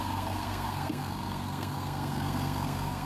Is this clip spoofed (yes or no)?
yes